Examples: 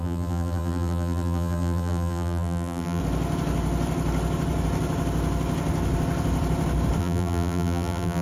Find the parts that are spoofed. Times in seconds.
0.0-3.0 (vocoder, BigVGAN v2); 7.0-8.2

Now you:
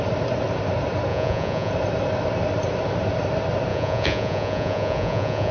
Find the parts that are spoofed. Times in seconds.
1.1-1.7 (vocoder, Vocos); 3.7-5.5

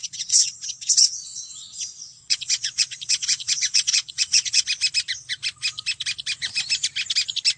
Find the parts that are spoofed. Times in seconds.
0.0-4.6 (vocoder, WaveNeXt)

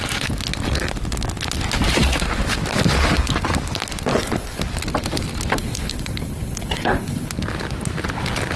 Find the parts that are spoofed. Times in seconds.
4.1-4.6 (codec, HILCodec); 5.6-7.3

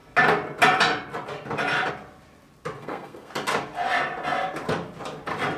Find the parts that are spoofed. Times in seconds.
2.8-3.3 (codec, SNAC)